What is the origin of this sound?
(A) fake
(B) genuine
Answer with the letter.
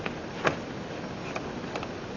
B